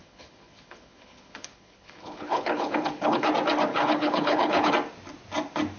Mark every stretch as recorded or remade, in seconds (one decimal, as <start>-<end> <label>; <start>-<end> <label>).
0.0-3.3 remade; 3.3-3.7 recorded; 3.7-4.7 remade; 4.7-5.8 recorded